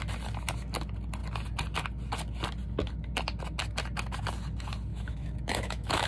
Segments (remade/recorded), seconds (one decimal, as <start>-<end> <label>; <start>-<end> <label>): 0.0-4.9 recorded; 4.9-6.1 remade